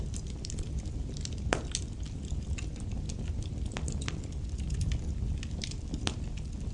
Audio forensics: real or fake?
real